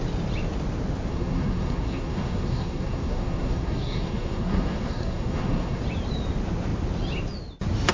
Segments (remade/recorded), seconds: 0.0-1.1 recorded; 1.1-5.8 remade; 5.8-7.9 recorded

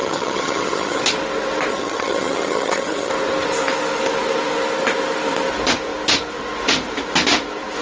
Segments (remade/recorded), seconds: 0.0-1.0 remade; 1.0-1.7 recorded; 1.7-3.1 remade; 3.1-7.8 recorded